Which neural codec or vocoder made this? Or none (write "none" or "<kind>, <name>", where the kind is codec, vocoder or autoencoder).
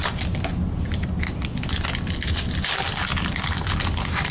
none